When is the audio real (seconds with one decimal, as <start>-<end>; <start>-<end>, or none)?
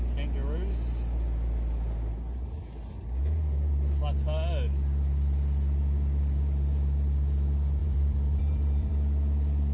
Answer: 0.0-7.8; 8.9-9.7